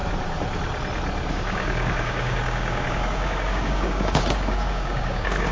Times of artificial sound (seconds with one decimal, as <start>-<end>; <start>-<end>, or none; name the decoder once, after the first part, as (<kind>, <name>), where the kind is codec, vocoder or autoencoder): 1.3-5.5 (codec, DAC)